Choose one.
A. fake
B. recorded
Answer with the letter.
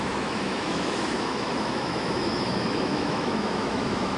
A